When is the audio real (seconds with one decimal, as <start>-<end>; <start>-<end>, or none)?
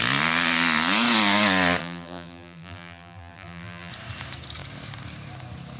0.0-1.8; 3.9-5.8